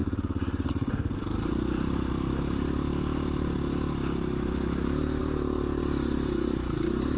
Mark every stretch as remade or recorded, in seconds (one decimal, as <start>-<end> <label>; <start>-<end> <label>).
0.0-7.2 recorded